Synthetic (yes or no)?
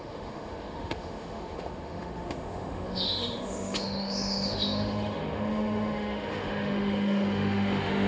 yes